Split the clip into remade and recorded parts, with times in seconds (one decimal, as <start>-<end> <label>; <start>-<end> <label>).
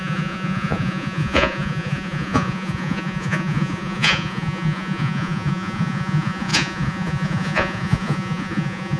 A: 0.0-9.0 remade